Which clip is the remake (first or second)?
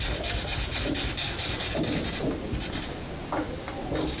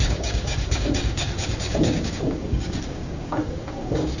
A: second